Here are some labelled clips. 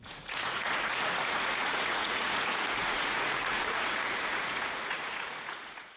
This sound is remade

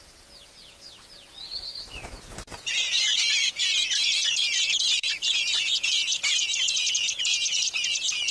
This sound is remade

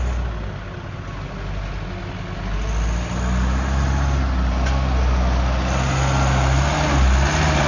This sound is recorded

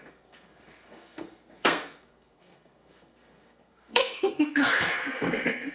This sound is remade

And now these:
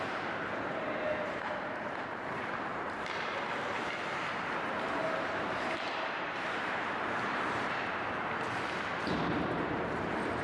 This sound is remade